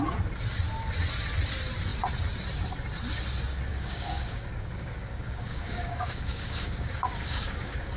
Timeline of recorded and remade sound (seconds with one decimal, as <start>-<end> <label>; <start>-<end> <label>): 0.0-3.7 recorded; 3.7-8.0 remade